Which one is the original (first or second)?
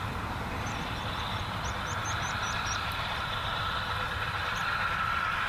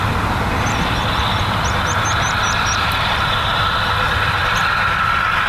second